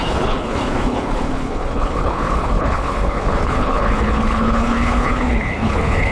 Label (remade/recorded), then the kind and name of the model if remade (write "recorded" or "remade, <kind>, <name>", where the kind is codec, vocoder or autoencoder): remade, codec, HILCodec